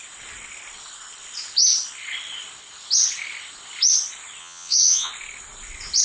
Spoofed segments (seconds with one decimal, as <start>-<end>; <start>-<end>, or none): 4.4-5.1

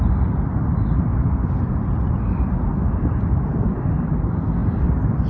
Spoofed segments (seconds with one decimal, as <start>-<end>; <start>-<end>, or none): none

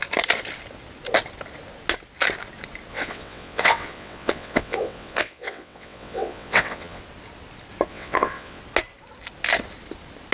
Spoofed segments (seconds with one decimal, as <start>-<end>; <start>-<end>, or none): 2.9-7.0; 7.9-8.6

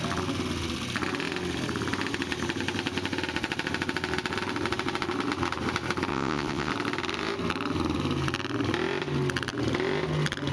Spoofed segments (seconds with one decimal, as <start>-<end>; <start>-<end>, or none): 6.1-6.7

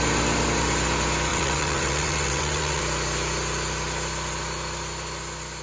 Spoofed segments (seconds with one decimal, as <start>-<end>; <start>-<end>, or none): 1.3-2.8

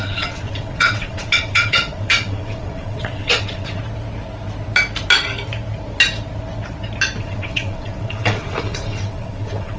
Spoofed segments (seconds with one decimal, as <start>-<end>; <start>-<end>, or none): 0.0-3.8; 7.2-9.8